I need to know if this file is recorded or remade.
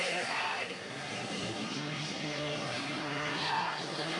remade